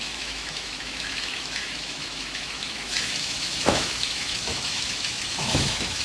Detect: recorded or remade remade